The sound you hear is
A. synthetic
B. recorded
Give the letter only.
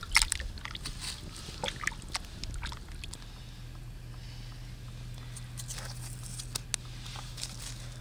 B